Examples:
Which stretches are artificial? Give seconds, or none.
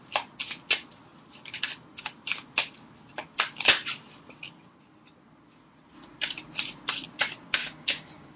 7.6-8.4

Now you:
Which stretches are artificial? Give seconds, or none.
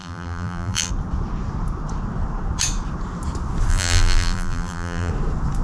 0.0-0.9; 3.7-5.1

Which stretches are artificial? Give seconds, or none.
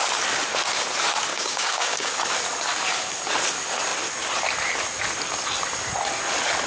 1.3-2.1